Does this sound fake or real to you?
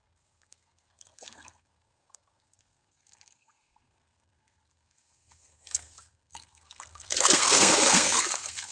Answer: fake